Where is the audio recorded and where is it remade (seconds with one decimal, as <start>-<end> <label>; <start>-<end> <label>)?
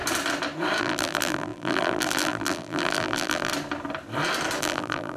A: 0.0-0.8 recorded; 0.8-3.5 remade; 3.5-4.6 recorded; 4.6-5.2 remade